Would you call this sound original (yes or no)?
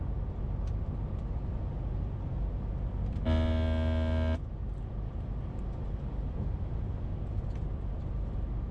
yes